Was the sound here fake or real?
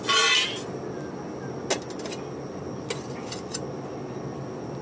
real